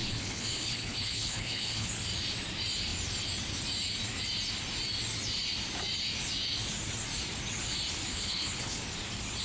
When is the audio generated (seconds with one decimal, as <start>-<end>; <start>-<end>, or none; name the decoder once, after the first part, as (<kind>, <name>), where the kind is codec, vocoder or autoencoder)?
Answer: 0.0-1.9 (codec, HILCodec); 8.1-8.8